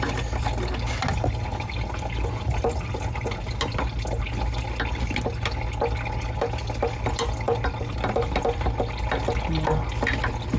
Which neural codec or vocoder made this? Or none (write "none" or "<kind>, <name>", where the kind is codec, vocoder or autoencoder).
none